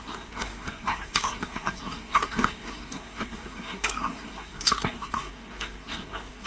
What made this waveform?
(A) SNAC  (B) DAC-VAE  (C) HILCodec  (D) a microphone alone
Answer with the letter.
A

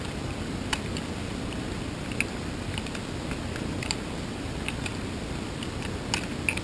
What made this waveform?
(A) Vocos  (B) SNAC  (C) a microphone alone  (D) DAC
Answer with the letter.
C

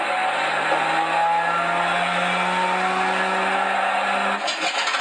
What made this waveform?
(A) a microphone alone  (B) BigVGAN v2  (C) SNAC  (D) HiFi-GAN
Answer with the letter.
A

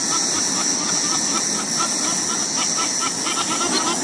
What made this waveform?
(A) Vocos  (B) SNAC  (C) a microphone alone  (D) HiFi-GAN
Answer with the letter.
C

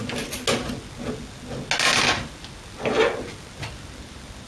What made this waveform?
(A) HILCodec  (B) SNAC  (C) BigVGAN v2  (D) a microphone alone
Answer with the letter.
D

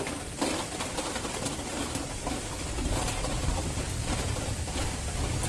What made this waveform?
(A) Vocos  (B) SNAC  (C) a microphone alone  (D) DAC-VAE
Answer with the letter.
C